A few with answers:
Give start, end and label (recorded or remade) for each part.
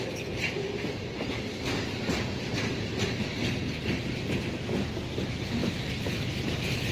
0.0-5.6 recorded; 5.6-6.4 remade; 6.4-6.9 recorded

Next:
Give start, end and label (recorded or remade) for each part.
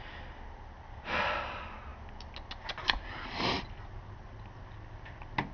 0.0-5.5 recorded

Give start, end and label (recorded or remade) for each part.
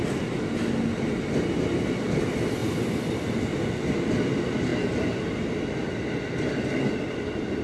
0.0-7.6 recorded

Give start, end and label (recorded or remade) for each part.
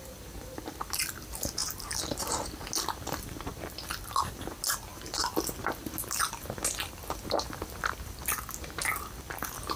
0.0-9.8 recorded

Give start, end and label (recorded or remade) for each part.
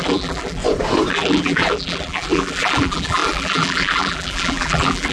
0.0-0.6 remade; 0.6-1.1 recorded; 1.1-5.1 remade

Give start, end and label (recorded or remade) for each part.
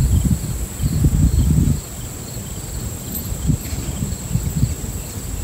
0.0-5.4 recorded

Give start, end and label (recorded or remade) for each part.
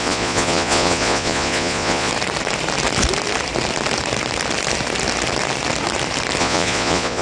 0.0-2.1 remade; 2.1-6.4 recorded; 6.4-7.2 remade